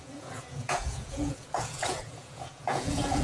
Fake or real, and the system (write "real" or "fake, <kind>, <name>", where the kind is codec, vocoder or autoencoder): fake, vocoder, Vocos